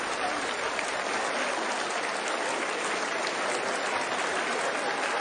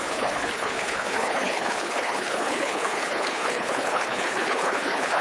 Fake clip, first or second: second